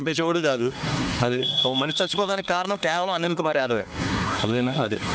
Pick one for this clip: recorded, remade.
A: remade